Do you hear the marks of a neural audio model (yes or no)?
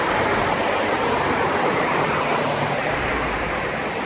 no